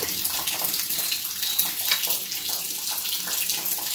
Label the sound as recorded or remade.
recorded